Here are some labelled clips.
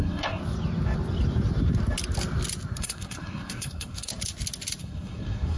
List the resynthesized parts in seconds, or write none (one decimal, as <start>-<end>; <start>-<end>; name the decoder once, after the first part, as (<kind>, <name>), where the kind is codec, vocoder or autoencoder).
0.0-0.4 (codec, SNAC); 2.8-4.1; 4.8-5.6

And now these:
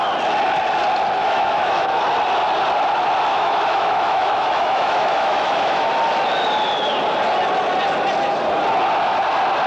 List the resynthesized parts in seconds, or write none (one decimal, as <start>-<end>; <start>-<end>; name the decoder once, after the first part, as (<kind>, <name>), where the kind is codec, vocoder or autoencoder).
1.2-2.0 (autoencoder, DAC-VAE); 3.3-5.9

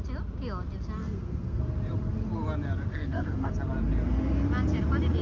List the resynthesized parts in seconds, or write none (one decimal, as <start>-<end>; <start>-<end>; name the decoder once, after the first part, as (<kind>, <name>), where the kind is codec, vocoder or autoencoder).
1.0-1.6 (codec, SNAC); 2.9-3.5